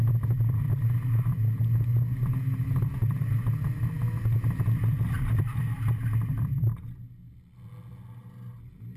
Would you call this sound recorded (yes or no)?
yes